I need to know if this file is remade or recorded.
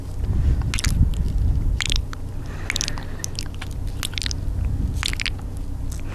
recorded